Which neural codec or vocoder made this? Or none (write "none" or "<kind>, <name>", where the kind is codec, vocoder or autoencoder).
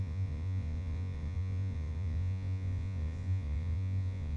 vocoder, Vocos